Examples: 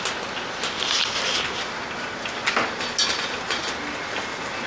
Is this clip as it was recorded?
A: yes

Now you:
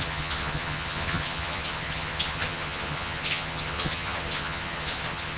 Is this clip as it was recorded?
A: no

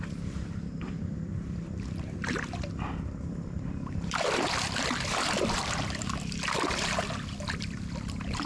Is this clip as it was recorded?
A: no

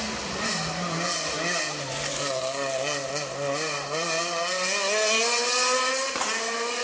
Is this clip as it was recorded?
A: yes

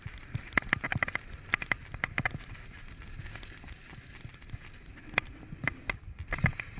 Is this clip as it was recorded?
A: yes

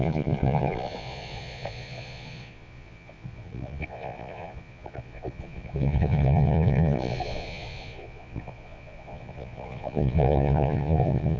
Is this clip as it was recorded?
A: no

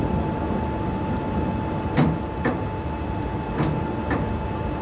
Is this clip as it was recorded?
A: yes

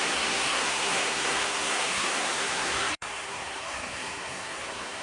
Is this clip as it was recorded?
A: no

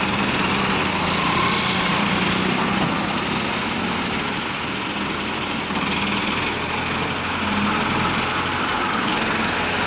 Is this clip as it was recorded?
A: yes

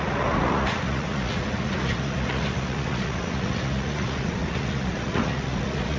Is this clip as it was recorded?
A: no